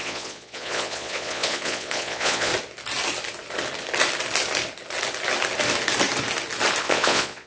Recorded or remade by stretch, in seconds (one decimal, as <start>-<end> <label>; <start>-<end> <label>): 0.0-2.5 remade; 2.5-6.8 recorded; 6.8-7.5 remade